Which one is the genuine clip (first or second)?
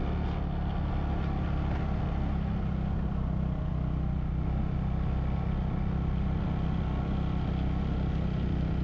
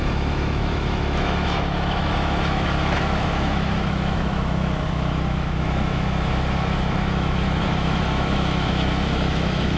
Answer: first